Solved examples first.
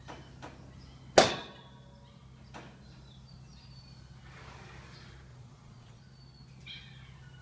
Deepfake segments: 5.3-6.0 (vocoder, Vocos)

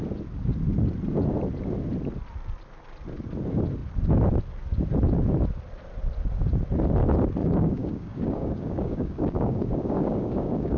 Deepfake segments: 7.4-10.8 (codec, DAC)

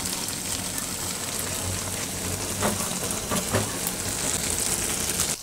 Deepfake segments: none

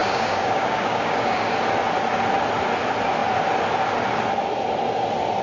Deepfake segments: 0.0-1.5 (codec, DAC)

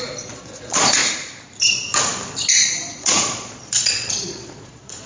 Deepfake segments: 0.0-1.0 (vocoder, Vocos); 2.6-5.1

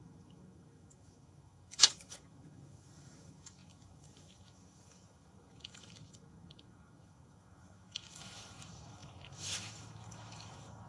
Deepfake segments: 0.0-10.9 (autoencoder, DAC-VAE)

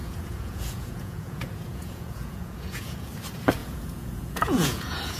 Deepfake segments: 0.0-3.1 (vocoder, Vocos); 3.6-5.2